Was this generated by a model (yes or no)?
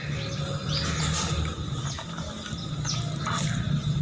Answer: no